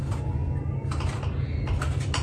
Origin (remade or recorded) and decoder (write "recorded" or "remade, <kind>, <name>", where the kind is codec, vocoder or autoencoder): recorded